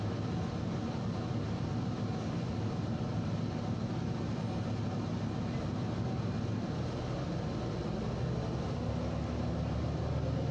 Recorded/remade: recorded